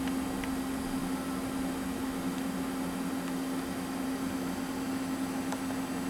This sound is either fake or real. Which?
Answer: real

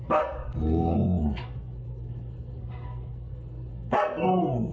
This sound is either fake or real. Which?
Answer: fake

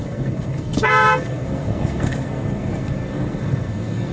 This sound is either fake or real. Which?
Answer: fake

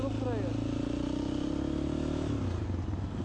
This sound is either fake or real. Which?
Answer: real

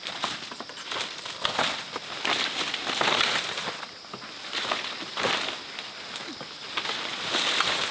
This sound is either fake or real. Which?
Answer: real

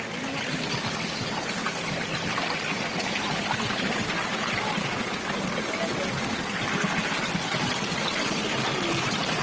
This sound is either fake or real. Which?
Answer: real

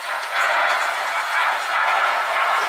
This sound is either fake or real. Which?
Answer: fake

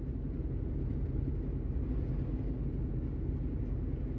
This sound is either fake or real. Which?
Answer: real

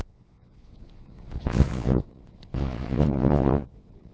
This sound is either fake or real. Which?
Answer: fake